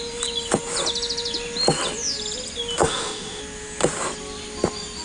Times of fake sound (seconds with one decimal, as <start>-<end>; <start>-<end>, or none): 2.8-3.4